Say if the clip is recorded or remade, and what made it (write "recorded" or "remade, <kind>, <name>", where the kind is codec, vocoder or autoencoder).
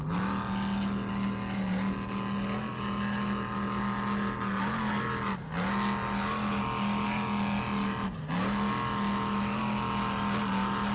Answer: recorded